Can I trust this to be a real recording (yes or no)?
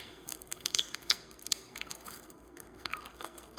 no